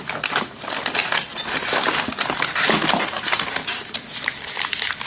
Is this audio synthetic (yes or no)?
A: no